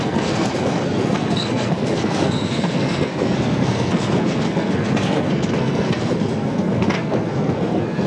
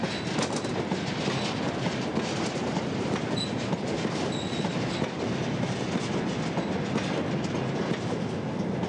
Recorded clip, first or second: second